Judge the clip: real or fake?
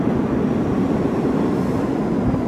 real